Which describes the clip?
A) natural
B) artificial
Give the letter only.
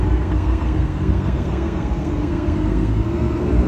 B